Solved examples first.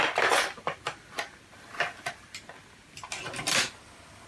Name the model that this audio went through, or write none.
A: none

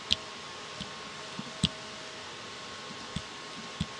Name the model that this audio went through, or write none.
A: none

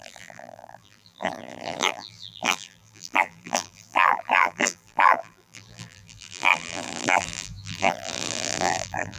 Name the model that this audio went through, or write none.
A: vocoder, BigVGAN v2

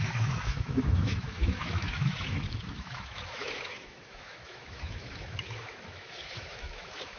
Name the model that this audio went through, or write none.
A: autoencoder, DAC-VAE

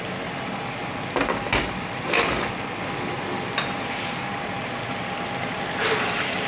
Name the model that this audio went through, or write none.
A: none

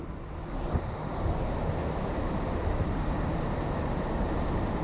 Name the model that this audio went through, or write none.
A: none